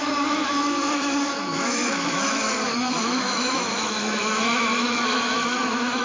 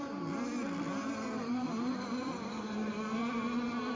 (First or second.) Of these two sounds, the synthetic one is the first